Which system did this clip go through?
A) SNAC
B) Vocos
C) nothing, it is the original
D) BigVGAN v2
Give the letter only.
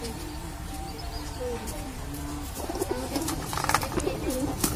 D